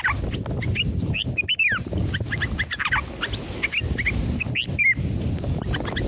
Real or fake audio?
real